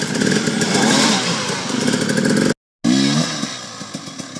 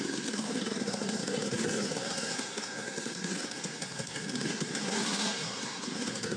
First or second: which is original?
first